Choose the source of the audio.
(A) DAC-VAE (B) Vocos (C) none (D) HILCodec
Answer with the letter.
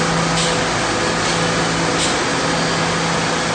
C